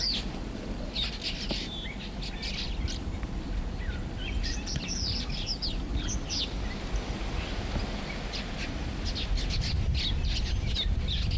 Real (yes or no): yes